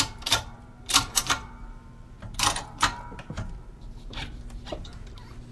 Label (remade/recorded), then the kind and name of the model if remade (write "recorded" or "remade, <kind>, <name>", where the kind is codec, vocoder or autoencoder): remade, vocoder, BigVGAN v2